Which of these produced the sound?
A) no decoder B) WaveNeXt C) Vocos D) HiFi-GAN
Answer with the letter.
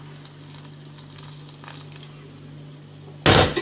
A